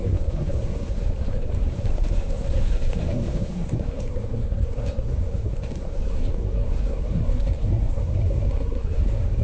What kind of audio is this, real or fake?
fake